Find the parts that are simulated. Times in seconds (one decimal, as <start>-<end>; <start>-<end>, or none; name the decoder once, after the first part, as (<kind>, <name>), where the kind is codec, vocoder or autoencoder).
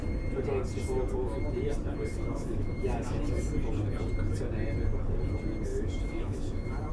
2.1-3.2 (autoencoder, DAC-VAE); 5.7-6.9